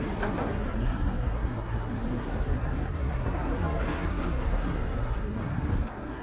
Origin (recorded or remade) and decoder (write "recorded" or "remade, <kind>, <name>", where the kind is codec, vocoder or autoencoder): remade, codec, SNAC